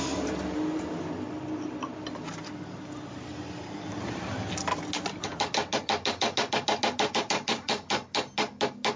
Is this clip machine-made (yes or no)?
no